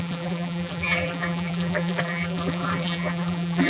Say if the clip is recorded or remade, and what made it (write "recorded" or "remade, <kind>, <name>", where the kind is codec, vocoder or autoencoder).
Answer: remade, vocoder, BigVGAN v2